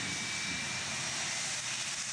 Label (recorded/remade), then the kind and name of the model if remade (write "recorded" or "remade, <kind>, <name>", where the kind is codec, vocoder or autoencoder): recorded